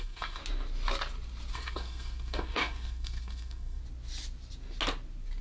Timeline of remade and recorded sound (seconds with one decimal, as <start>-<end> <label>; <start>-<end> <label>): 0.0-0.4 remade; 0.4-1.5 recorded; 1.5-3.8 remade; 3.8-5.4 recorded